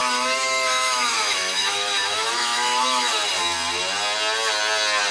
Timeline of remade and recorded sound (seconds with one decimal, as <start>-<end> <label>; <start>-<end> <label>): 0.0-3.1 remade; 3.1-5.1 recorded